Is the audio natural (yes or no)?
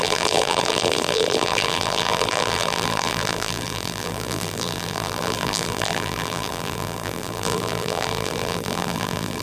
no